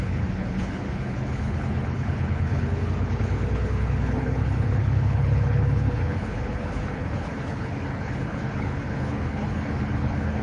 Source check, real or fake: fake